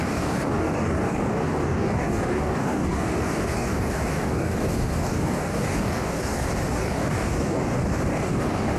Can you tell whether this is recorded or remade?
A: remade